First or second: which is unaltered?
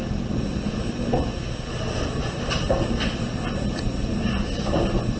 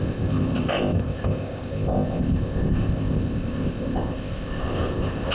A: first